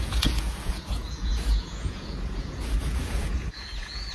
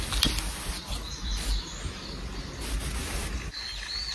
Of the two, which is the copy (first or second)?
first